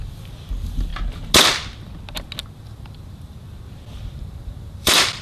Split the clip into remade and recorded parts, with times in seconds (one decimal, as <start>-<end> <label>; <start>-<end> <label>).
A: 0.0-0.9 remade; 0.9-2.5 recorded; 2.5-5.2 remade